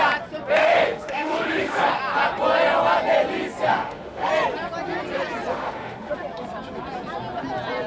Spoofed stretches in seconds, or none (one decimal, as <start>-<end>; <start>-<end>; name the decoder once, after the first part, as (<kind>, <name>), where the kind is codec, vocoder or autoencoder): 0.6-2.0 (autoencoder, DAC-VAE); 3.7-4.3; 5.5-6.1